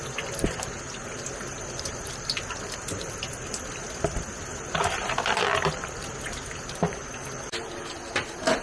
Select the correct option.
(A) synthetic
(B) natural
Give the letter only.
B